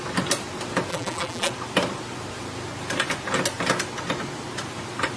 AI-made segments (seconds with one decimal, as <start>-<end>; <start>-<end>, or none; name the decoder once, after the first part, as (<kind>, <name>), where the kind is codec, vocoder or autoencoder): 0.9-1.5 (vocoder, BigVGAN v2)

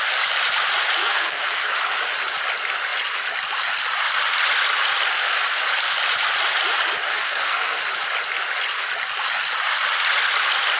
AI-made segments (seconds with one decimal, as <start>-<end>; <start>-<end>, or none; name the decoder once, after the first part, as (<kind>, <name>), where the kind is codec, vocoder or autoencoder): 1.0-1.7 (codec, SNAC); 7.1-7.8